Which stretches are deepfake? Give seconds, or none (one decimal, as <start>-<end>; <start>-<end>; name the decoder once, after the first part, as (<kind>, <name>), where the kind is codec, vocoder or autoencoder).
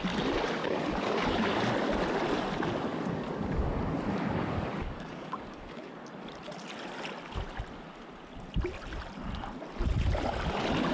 0.6-1.6 (codec, DAC); 2.9-5.9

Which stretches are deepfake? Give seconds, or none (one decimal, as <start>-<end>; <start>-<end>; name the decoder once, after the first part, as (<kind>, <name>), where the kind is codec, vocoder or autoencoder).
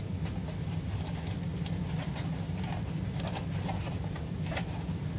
none